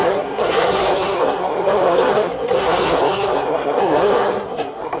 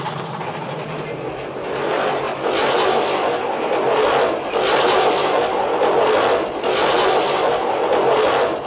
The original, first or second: second